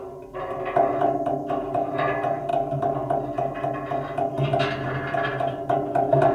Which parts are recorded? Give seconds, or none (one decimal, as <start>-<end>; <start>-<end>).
0.0-6.3